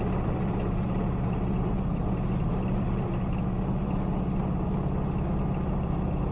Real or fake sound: real